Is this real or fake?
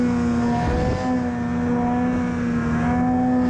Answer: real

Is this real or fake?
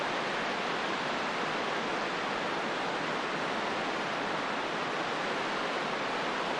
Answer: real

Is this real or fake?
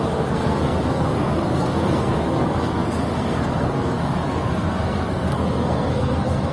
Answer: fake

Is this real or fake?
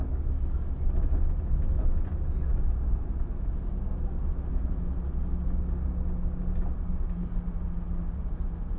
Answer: real